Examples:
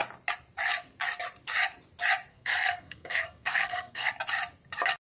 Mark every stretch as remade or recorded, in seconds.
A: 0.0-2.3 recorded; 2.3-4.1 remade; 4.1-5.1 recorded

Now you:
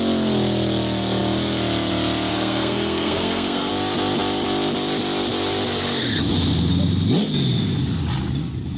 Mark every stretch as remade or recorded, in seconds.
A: 0.0-2.3 recorded; 2.3-3.7 remade; 3.7-8.8 recorded

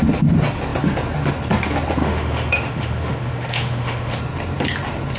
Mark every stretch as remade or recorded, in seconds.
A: 0.0-2.0 recorded; 2.0-4.2 remade; 4.2-5.2 recorded

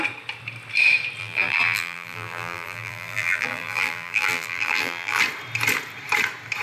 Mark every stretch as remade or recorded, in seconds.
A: 0.0-1.2 recorded; 1.2-5.2 remade; 5.2-6.6 recorded

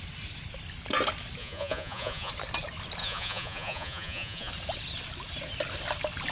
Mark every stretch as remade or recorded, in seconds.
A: 0.0-1.4 recorded; 1.4-2.3 remade; 2.3-3.0 recorded; 3.0-4.5 remade; 4.5-6.3 recorded

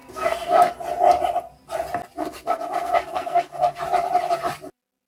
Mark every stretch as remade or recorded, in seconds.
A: 0.0-0.7 remade; 0.7-2.2 recorded; 2.2-3.8 remade; 3.8-5.1 recorded

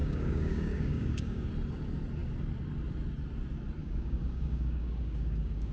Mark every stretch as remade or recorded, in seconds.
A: 0.0-1.5 remade; 1.5-3.8 recorded; 3.8-5.7 remade

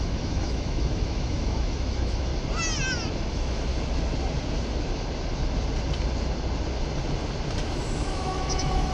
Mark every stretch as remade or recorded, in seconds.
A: 0.0-2.3 remade; 2.3-3.3 recorded; 3.3-3.7 remade; 3.7-8.0 recorded; 8.0-8.9 remade